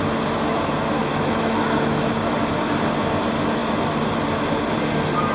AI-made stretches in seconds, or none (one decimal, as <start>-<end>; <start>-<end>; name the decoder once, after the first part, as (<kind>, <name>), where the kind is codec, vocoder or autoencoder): 1.0-2.1 (autoencoder, DAC-VAE)